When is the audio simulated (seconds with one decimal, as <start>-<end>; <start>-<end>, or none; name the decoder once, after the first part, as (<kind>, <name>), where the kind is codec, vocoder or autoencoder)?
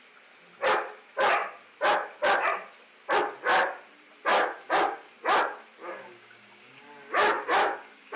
4.3-5.1 (codec, DAC); 5.8-8.2